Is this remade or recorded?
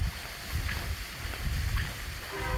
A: recorded